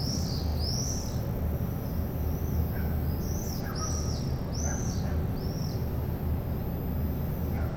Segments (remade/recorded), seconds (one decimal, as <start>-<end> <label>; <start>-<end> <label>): 0.0-7.8 recorded